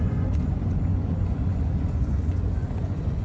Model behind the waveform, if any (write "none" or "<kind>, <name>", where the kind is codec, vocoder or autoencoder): vocoder, Vocos